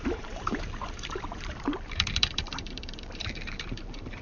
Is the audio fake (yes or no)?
yes